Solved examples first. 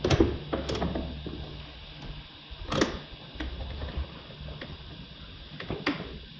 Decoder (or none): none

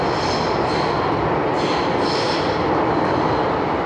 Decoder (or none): none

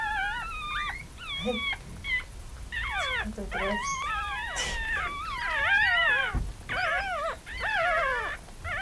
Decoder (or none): none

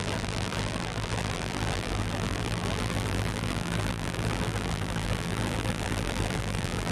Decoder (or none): vocoder, BigVGAN v2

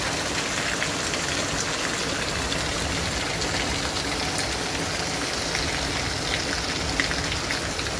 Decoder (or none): none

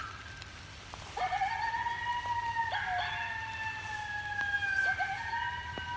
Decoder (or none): none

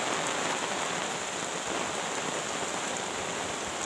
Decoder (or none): none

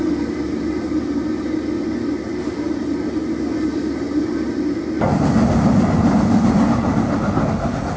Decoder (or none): none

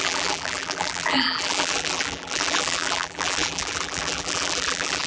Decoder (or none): vocoder, BigVGAN v2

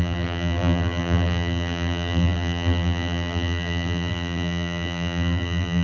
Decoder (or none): vocoder, BigVGAN v2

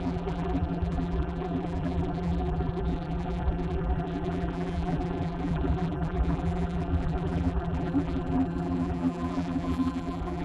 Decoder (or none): vocoder, BigVGAN v2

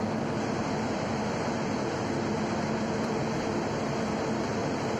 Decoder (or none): vocoder, BigVGAN v2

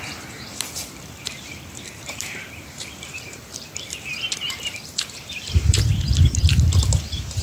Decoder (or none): vocoder, BigVGAN v2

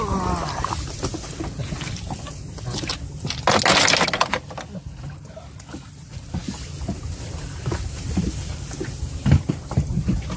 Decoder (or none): none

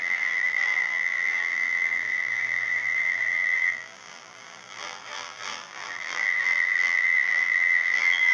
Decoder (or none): vocoder, BigVGAN v2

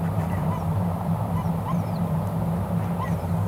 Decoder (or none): vocoder, BigVGAN v2